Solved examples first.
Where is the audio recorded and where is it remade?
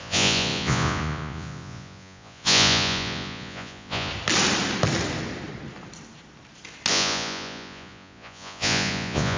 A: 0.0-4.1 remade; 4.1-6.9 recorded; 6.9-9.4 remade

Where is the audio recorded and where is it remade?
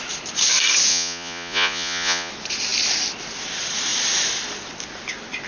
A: 0.0-0.9 recorded; 0.9-2.3 remade; 2.3-5.5 recorded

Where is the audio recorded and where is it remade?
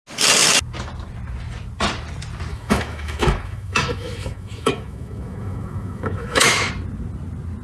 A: 0.0-2.5 recorded; 2.5-6.7 remade; 6.7-7.6 recorded